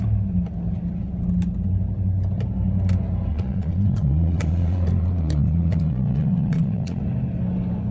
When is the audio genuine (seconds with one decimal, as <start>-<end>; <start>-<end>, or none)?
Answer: 0.0-3.3; 7.0-7.9